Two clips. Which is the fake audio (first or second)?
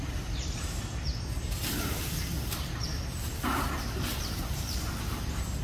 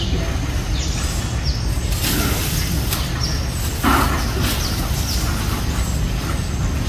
first